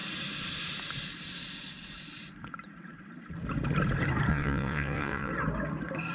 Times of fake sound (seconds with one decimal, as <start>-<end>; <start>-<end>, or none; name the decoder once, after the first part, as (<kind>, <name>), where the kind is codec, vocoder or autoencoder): 4.3-5.3 (vocoder, WaveNeXt)